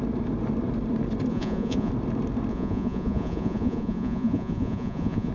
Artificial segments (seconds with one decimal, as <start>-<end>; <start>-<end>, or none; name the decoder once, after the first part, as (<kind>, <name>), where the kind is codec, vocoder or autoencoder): 1.3-1.9 (vocoder, Vocos); 2.5-5.3